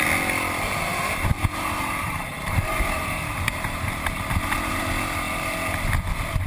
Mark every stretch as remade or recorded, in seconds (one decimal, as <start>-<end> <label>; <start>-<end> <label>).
0.0-0.9 recorded; 0.9-4.8 remade; 4.8-6.5 recorded